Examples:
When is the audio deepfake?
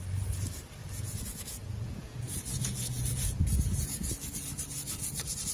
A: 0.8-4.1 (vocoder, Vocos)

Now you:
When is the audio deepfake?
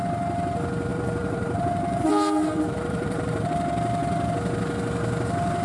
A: 0.9-3.5 (vocoder, BigVGAN v2)